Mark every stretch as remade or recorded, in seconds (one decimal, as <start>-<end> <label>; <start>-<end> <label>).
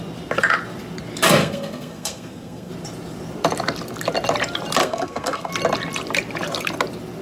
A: 0.0-1.4 recorded; 1.4-2.7 remade; 2.7-4.8 recorded; 4.8-5.5 remade; 5.5-7.2 recorded